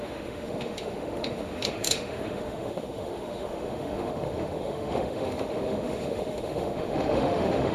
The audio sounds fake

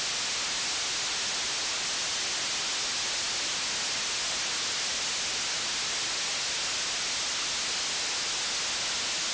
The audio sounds real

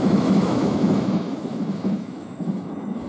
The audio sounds fake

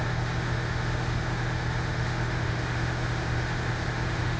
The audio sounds fake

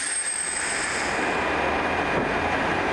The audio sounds real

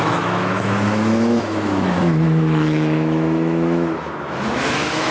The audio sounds fake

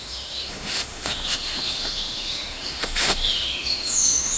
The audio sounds fake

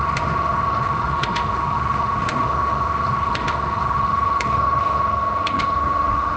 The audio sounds fake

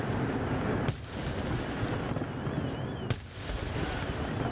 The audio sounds real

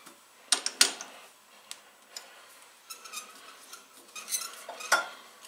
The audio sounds real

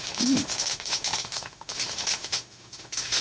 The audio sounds fake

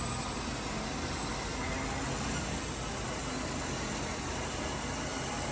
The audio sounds real